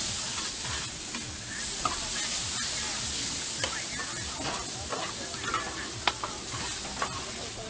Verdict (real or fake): real